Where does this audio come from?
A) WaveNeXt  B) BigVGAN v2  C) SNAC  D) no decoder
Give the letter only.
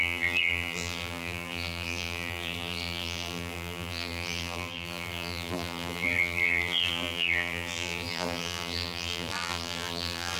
B